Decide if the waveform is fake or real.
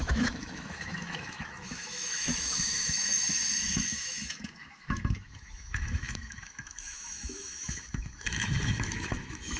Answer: fake